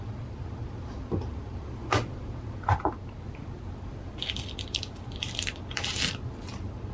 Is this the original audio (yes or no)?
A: no